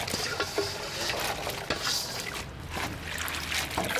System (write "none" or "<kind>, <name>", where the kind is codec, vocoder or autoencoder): none